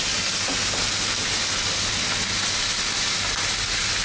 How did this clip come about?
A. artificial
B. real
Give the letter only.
B